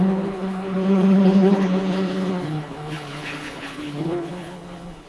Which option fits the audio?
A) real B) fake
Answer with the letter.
B